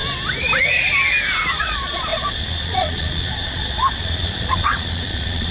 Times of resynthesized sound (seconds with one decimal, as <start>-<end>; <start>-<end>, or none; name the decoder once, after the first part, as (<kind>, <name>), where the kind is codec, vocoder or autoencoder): 1.6-5.5 (vocoder, Vocos)